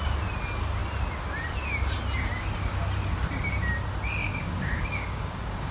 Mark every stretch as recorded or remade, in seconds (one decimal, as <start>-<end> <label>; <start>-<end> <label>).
0.0-4.2 recorded; 4.2-5.7 remade